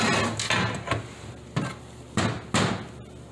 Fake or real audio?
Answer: real